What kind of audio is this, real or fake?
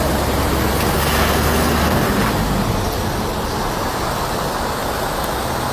real